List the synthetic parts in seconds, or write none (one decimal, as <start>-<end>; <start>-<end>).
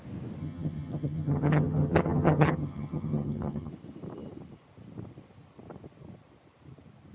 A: 0.4-3.7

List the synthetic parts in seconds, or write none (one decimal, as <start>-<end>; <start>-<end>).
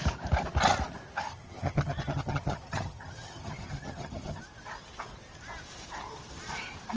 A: 1.3-4.4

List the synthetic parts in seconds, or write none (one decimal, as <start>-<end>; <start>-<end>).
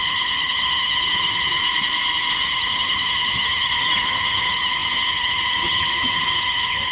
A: 0.0-1.6; 2.3-6.9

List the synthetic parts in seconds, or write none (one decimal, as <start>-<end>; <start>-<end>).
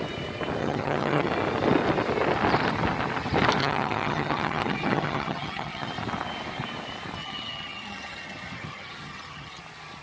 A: 0.6-1.3; 3.6-5.9; 7.2-9.6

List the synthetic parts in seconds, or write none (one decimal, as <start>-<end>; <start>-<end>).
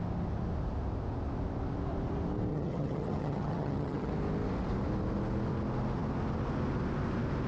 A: 2.5-4.1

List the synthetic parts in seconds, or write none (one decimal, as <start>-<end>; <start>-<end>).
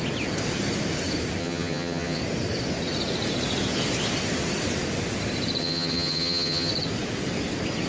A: 1.4-2.2; 5.6-6.7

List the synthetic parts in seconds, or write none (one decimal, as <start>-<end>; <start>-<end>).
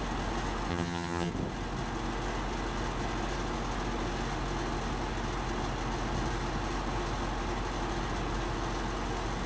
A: 0.7-1.3